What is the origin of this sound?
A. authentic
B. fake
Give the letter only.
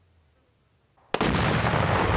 A